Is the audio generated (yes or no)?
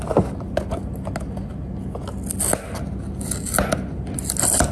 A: no